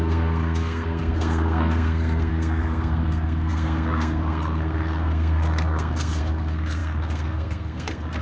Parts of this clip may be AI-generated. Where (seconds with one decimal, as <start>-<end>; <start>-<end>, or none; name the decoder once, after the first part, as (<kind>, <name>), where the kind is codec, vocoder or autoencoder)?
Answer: 0.0-8.2 (codec, SNAC)